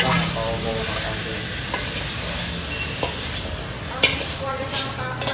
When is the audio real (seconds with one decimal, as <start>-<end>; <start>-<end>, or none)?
0.0-5.3